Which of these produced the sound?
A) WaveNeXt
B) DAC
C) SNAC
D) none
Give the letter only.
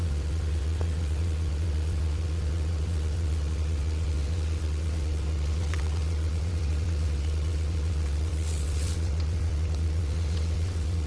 A